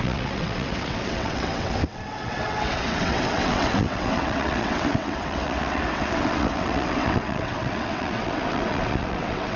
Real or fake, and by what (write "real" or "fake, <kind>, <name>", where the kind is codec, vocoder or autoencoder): fake, vocoder, WaveNeXt